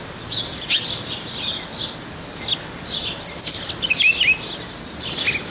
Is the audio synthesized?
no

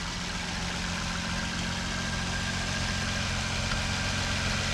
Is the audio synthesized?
no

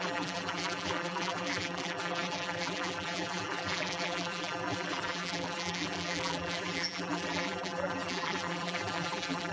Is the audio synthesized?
yes